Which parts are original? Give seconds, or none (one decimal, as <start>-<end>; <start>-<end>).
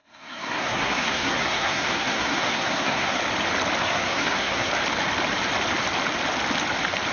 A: 3.2-3.8; 4.7-7.1